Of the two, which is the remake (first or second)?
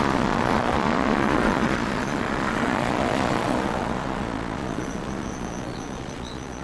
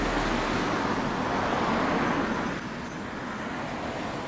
first